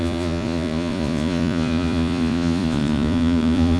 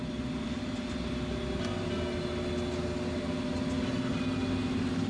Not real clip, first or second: first